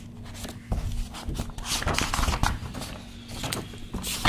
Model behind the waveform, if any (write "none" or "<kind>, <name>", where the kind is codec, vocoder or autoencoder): none